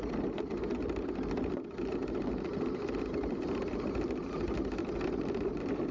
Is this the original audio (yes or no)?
yes